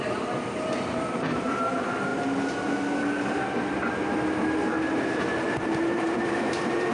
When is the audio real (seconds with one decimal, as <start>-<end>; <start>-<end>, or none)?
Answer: 2.1-5.5